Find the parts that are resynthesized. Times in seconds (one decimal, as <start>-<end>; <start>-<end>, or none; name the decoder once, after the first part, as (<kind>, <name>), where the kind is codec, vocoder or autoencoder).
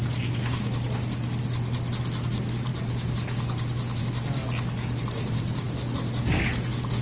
none